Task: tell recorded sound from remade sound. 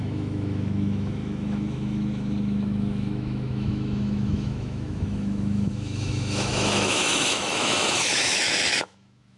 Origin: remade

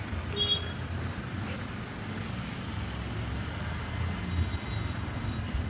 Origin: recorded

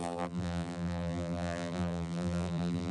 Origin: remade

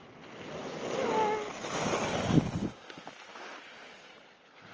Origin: recorded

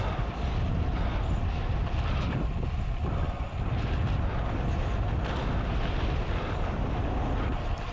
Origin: recorded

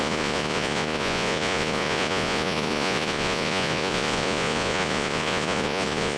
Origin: remade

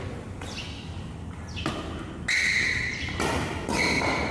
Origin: recorded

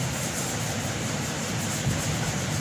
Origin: remade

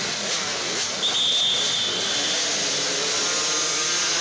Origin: recorded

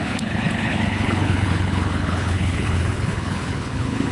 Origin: remade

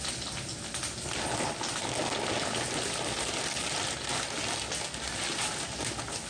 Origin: recorded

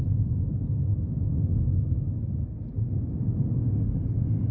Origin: recorded